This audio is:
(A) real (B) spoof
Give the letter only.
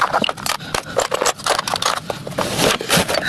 A